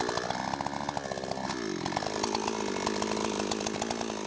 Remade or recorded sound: recorded